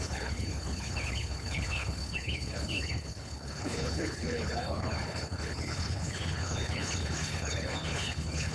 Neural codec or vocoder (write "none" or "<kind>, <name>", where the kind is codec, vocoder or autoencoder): codec, HILCodec